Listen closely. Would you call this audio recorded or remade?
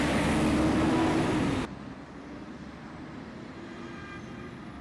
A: recorded